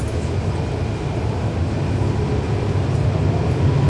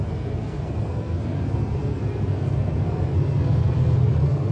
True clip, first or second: first